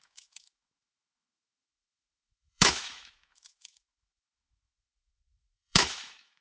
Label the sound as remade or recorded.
remade